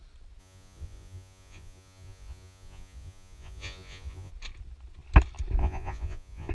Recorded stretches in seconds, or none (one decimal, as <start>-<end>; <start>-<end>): 0.0-0.4; 4.3-5.6